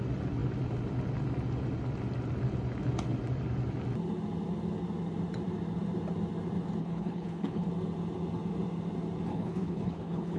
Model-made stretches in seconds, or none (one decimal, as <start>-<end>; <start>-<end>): 6.8-7.7; 9.3-10.4